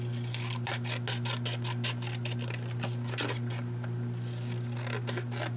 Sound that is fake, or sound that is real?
real